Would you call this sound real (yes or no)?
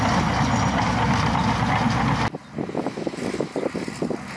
yes